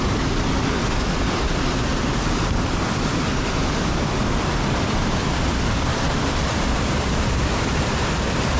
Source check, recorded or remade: remade